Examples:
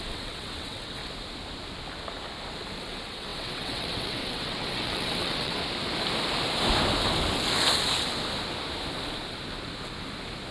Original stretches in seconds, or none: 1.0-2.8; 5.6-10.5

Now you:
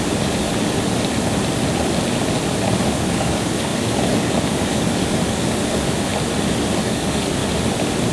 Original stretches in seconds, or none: 0.5-2.8; 6.1-6.8; 7.4-8.1

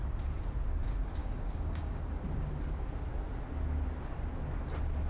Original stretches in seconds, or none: 0.0-1.2; 2.0-5.1

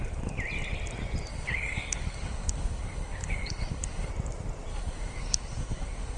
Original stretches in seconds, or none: 0.0-1.3; 4.1-4.7

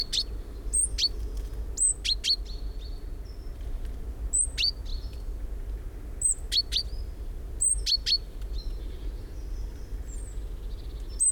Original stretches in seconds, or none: 0.0-11.3

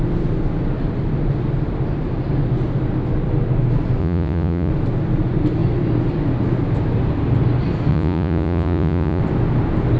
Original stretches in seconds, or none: 0.0-4.0; 4.7-7.9; 9.2-10.0